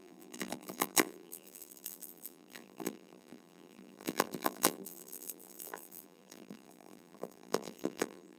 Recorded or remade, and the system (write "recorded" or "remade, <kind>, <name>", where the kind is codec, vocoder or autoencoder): remade, vocoder, BigVGAN v2